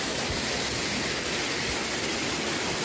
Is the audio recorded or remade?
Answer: recorded